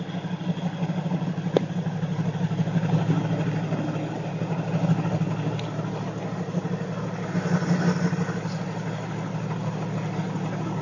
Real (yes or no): yes